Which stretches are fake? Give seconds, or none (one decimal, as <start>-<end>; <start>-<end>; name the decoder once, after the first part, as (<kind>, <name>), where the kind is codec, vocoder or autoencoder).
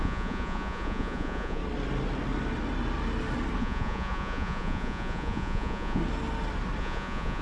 0.0-1.6 (vocoder, Vocos); 3.6-6.0; 6.8-7.4